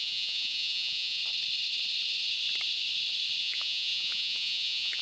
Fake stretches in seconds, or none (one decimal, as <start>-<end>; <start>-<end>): 0.0-1.2; 3.4-5.0